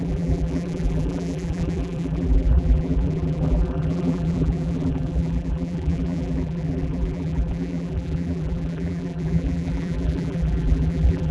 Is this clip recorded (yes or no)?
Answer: no